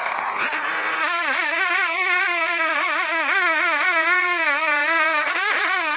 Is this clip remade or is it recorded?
remade